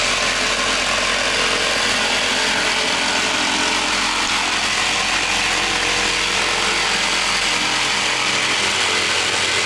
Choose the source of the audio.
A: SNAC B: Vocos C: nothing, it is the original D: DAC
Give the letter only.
C